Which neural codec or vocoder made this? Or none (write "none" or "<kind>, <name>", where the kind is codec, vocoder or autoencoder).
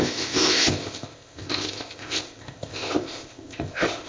codec, ZipCodec